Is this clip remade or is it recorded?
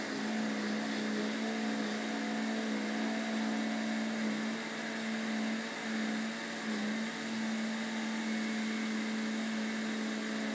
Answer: recorded